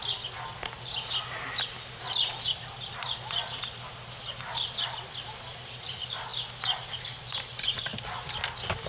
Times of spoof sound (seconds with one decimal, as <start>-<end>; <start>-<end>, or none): none